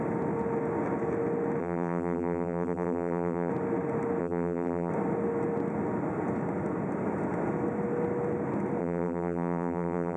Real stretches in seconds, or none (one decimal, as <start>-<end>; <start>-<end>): 0.0-1.6; 3.5-4.2; 4.9-8.8